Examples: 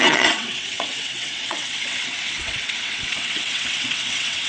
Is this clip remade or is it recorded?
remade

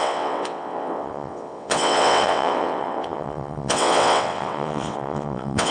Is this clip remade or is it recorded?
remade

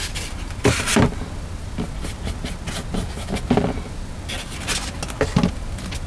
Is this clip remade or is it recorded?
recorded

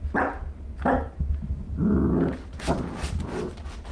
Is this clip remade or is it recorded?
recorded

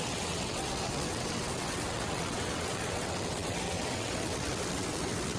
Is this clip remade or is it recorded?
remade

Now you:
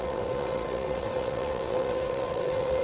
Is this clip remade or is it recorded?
remade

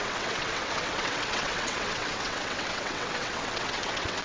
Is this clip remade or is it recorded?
remade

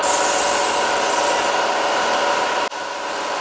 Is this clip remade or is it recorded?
recorded